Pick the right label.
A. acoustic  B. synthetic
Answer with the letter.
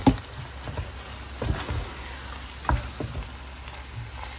A